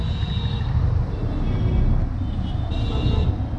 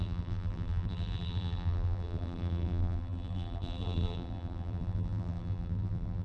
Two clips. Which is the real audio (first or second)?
first